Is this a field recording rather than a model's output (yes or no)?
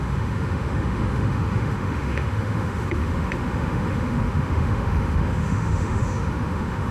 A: no